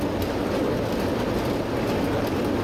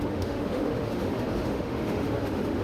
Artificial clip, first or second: second